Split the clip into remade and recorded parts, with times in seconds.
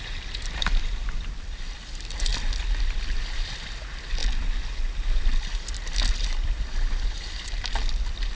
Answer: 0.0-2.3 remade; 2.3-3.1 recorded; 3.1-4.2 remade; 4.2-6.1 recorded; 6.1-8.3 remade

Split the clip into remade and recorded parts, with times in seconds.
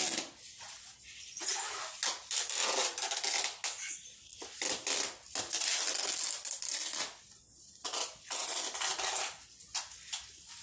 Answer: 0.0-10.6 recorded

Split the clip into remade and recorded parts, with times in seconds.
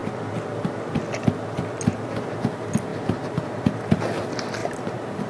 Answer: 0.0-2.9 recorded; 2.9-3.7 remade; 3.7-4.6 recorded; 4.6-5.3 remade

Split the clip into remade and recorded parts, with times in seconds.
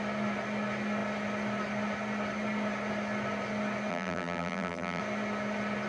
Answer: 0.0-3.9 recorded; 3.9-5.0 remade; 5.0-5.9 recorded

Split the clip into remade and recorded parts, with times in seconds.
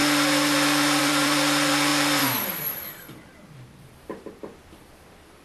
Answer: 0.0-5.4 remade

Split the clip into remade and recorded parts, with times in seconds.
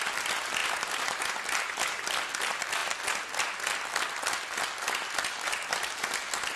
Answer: 0.0-0.6 recorded; 0.6-1.3 remade; 1.3-6.6 recorded